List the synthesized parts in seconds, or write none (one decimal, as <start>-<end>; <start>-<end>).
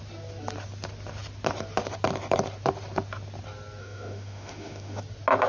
3.8-5.0